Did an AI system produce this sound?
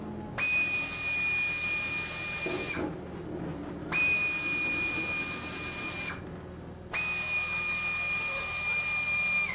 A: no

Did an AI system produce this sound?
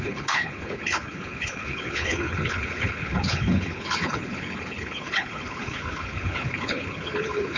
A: yes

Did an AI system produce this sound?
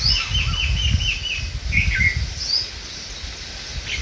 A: no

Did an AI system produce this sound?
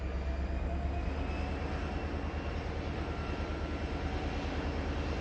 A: no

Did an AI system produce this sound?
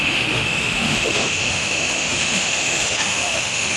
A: yes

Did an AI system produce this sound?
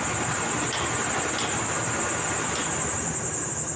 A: no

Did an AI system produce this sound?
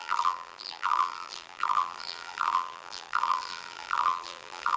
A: yes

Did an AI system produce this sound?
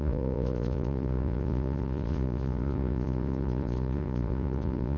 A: yes